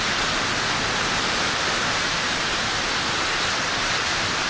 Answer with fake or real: real